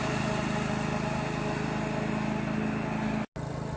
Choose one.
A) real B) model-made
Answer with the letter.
A